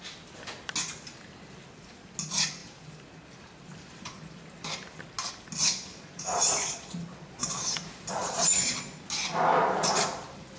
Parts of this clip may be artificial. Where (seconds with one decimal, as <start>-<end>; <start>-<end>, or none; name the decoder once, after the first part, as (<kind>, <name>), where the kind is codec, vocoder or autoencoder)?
5.9-7.8 (vocoder, Vocos); 8.2-9.0

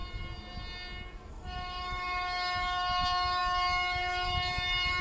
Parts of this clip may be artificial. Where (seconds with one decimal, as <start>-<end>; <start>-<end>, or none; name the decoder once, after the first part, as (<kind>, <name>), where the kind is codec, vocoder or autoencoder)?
1.3-5.0 (autoencoder, DAC-VAE)

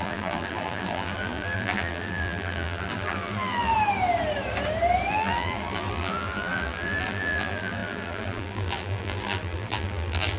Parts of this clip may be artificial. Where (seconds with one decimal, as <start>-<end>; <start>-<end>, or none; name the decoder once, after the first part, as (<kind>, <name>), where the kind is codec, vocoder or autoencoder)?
0.0-3.7 (vocoder, BigVGAN v2); 5.1-10.4

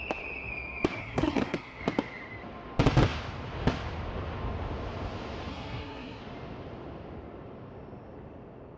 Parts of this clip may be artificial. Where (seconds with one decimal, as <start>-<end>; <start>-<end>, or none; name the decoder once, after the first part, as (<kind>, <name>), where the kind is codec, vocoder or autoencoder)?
1.0-1.8 (codec, SNAC); 5.5-6.2

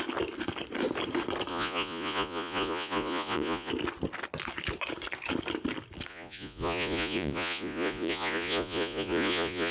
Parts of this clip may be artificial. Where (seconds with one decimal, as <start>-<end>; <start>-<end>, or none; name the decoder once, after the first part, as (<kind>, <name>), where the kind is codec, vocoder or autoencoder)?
1.5-3.7 (vocoder, Vocos); 6.1-9.7

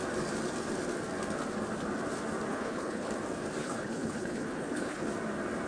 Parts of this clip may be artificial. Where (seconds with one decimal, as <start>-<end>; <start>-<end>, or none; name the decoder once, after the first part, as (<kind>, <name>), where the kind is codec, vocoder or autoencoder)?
2.5-3.1 (codec, HILCodec); 3.6-5.1